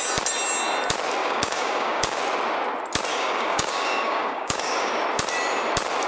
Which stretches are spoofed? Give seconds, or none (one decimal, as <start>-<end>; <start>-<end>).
1.2-2.2; 3.1-4.9